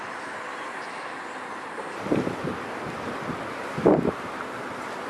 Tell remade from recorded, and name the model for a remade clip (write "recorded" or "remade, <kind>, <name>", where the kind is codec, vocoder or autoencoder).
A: recorded